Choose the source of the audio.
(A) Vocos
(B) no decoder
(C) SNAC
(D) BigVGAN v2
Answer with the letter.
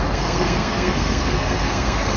C